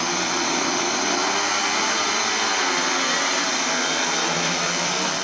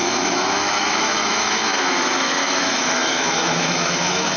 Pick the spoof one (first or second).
second